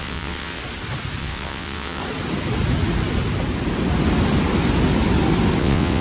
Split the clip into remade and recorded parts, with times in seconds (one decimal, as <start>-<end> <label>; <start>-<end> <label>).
0.0-0.6 remade; 0.6-1.2 recorded; 1.2-2.0 remade; 2.0-5.6 recorded; 5.6-6.0 remade